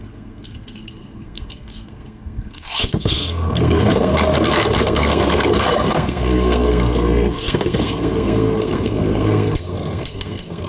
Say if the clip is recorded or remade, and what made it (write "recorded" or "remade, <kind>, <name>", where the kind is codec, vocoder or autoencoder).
remade, codec, SNAC